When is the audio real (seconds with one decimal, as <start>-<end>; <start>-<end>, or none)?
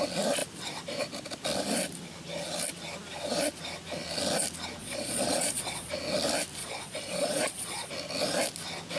0.0-4.8; 5.9-6.6; 7.9-9.0